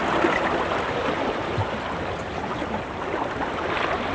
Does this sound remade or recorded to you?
recorded